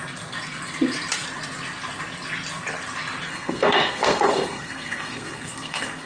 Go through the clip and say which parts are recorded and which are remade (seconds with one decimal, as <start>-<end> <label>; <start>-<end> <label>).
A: 0.0-3.3 recorded; 3.3-6.1 remade